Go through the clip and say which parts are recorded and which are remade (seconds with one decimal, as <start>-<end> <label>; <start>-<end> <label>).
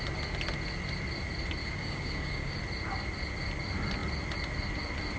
0.0-1.6 recorded; 1.6-2.6 remade; 2.6-5.2 recorded